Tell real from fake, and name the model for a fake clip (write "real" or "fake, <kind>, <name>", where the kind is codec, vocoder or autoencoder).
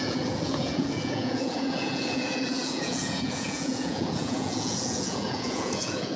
fake, vocoder, Vocos